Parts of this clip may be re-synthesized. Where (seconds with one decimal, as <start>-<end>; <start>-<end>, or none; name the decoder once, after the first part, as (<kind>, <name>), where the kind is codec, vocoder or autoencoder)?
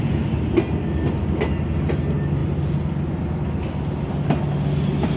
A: none